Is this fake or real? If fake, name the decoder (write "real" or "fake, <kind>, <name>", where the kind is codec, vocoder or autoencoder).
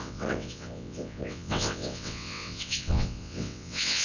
fake, vocoder, WaveNeXt